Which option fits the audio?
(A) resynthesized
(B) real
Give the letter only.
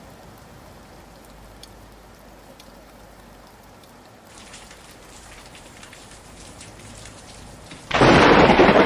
A